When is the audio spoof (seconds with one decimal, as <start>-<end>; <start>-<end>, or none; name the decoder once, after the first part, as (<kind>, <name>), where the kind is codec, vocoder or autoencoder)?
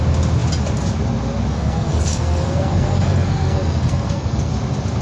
1.5-4.5 (codec, SNAC)